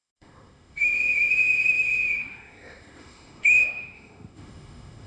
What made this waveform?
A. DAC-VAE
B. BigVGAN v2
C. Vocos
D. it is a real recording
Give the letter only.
A